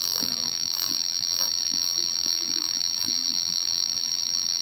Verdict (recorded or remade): remade